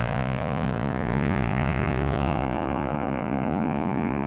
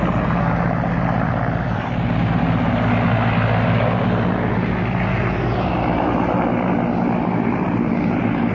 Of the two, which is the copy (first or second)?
first